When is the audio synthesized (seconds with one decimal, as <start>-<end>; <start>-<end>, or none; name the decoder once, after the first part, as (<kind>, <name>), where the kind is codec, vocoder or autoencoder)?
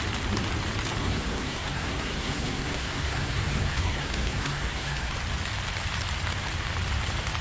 1.0-5.1 (codec, SNAC)